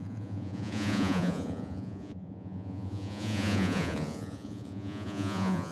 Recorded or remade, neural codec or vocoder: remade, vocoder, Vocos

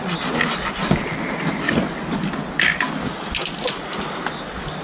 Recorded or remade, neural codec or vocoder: recorded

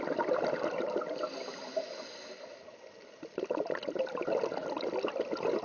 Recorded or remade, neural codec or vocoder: recorded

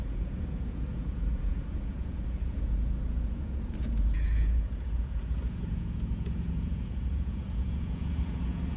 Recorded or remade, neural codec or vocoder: remade, vocoder, Vocos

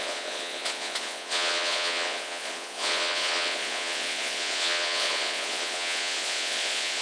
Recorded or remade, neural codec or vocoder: remade, vocoder, Vocos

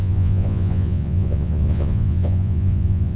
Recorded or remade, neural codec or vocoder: remade, vocoder, Vocos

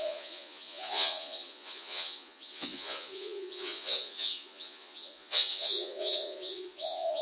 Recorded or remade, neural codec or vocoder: remade, vocoder, Vocos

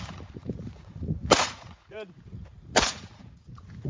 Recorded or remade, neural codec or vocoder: remade, vocoder, Vocos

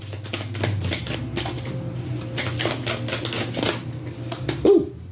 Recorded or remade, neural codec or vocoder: recorded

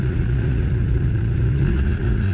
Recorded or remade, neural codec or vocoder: remade, vocoder, Vocos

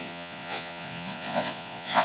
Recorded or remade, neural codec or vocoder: remade, vocoder, Vocos